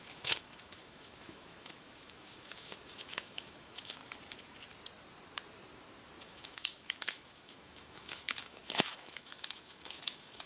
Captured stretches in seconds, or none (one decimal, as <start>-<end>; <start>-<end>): 4.0-6.2